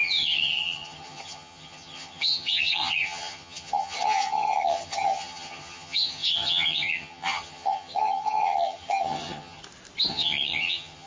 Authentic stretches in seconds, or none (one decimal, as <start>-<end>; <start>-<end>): 9.6-10.1